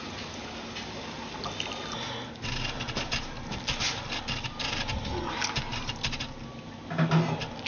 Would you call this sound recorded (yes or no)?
yes